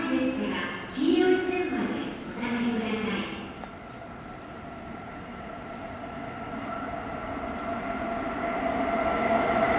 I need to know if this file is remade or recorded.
recorded